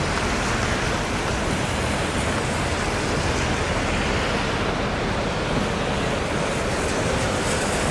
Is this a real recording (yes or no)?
yes